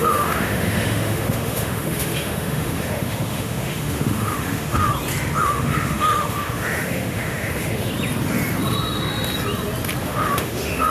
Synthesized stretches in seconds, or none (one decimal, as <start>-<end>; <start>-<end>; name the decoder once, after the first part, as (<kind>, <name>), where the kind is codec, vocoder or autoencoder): 0.0-4.9 (autoencoder, DAC-VAE); 5.4-7.9; 10.0-10.9